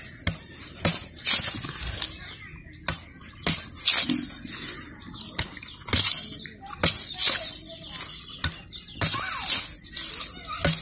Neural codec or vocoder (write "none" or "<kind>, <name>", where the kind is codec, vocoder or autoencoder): none